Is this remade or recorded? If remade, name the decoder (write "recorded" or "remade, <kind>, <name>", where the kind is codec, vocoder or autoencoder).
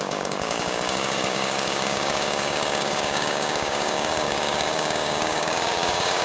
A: remade, codec, DAC